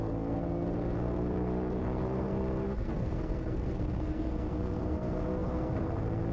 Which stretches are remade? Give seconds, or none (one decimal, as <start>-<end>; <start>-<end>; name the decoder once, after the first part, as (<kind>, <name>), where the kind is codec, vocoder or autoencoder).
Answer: 0.0-6.3 (codec, SNAC)